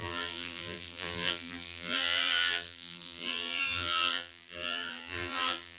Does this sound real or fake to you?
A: fake